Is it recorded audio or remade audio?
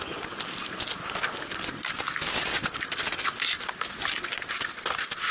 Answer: recorded